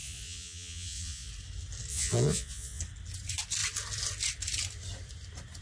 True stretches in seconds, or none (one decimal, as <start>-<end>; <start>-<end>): 1.3-1.9; 2.8-5.6

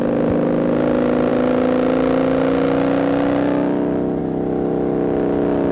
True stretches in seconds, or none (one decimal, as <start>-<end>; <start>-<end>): 0.0-5.7

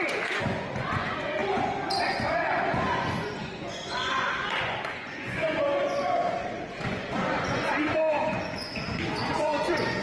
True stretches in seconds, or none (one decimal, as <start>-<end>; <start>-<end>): none

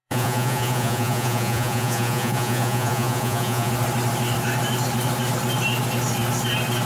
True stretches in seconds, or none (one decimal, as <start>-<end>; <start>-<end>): 3.7-6.9

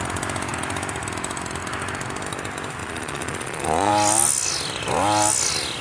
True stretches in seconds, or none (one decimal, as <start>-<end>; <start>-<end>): 0.0-2.8; 3.9-5.8